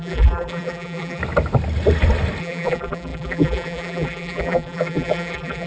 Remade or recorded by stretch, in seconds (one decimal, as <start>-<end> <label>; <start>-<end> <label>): 0.0-1.2 remade; 1.2-2.4 recorded; 2.4-5.7 remade